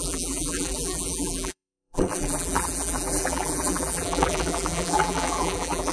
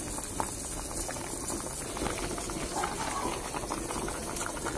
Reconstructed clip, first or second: first